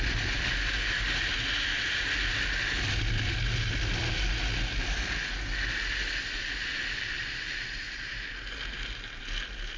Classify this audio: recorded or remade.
recorded